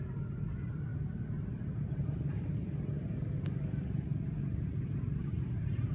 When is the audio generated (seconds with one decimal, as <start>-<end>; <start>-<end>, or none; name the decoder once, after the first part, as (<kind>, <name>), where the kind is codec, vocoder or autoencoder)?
none